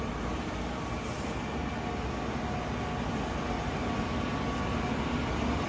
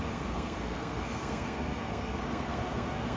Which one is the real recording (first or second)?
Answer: first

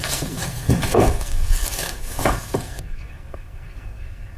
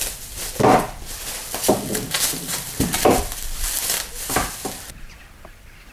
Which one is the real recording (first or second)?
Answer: second